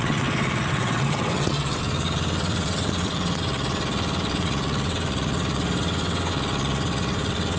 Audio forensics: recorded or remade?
remade